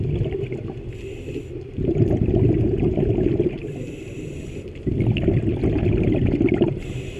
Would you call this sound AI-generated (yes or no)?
no